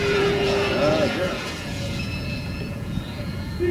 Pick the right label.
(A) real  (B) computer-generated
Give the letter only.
B